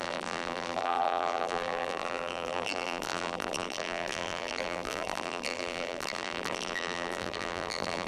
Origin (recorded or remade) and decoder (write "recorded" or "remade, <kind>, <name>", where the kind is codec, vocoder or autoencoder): remade, vocoder, BigVGAN v2